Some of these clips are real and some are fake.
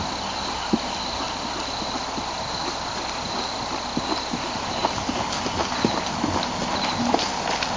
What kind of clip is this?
real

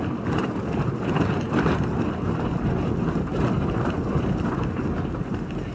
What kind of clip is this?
real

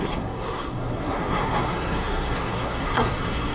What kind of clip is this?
fake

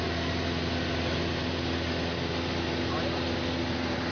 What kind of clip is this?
real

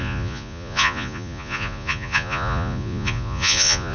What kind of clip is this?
fake